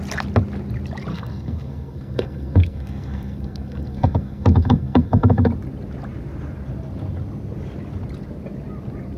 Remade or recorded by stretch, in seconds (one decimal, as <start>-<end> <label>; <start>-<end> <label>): 0.0-1.1 recorded; 1.1-5.5 remade; 5.5-9.2 recorded